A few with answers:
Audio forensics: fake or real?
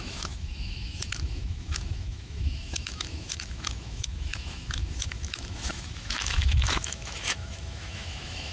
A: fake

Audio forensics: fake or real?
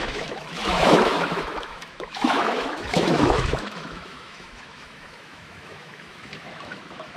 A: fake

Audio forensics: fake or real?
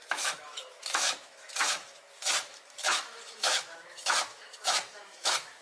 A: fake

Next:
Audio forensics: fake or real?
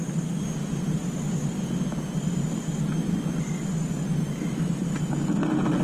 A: real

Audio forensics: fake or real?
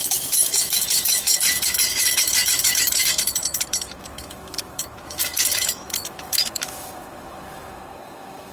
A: fake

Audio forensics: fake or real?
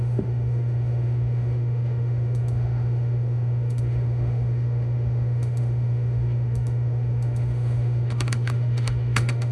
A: fake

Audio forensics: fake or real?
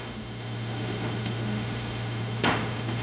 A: fake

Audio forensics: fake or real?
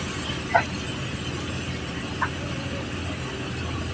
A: real